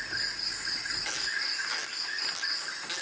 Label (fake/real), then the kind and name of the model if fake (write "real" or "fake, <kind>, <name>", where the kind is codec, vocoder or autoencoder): real